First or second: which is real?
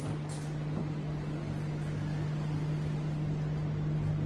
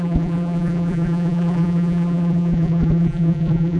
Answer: first